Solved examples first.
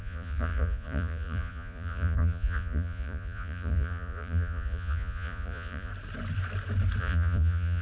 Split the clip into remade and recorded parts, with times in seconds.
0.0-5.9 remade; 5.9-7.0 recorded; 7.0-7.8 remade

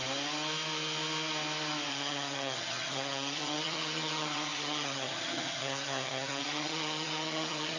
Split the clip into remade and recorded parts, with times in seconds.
0.0-1.9 recorded; 1.9-7.8 remade

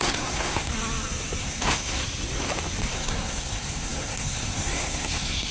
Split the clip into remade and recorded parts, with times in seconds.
0.0-0.7 remade; 0.7-1.4 recorded; 1.4-2.0 remade; 2.0-2.9 recorded; 2.9-5.5 remade